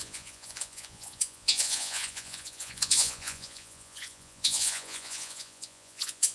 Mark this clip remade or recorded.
remade